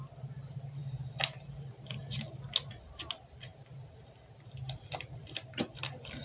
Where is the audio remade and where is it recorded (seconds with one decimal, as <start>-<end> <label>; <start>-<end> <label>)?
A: 0.0-6.2 recorded